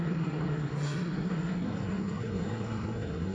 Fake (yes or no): yes